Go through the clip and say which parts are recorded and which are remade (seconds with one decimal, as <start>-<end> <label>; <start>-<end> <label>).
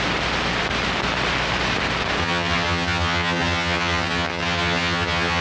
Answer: 0.0-2.2 recorded; 2.2-5.4 remade